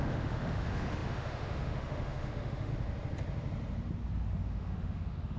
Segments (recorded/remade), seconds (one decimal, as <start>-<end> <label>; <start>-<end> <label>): 0.0-2.7 remade; 2.7-4.3 recorded; 4.3-5.4 remade

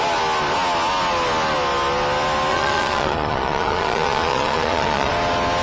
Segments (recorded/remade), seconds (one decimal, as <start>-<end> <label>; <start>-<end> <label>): 0.0-2.5 recorded; 2.5-5.1 remade; 5.1-5.6 recorded

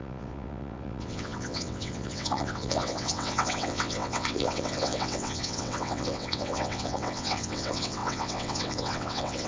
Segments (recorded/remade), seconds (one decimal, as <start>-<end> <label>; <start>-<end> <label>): 0.0-9.5 remade

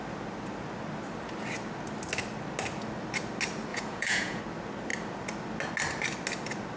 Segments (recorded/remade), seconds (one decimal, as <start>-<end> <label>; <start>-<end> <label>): 0.0-3.7 recorded; 3.7-4.4 remade; 4.4-6.8 recorded

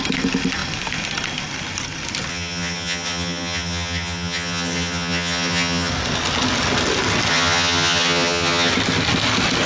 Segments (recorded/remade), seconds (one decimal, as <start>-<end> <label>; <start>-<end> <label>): 0.0-2.3 recorded; 2.3-5.9 remade; 5.9-7.3 recorded; 7.3-8.7 remade; 8.7-9.7 recorded

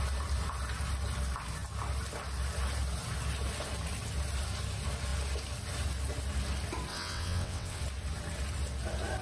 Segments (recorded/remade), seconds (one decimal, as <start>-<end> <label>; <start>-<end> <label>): 0.0-6.9 recorded; 6.9-7.8 remade; 7.8-9.2 recorded

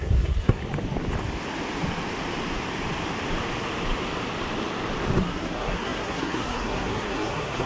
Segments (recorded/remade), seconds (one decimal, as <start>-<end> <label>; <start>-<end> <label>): 0.0-0.6 remade; 0.6-5.2 recorded; 5.2-7.7 remade

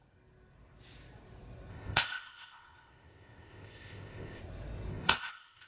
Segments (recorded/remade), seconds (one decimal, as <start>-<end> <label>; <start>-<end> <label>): 0.0-1.7 recorded; 1.7-4.4 remade; 4.4-4.9 recorded; 4.9-5.7 remade